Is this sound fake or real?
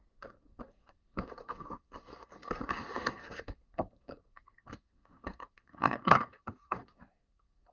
fake